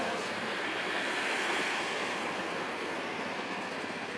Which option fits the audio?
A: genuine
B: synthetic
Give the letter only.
B